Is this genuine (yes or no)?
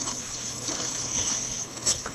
no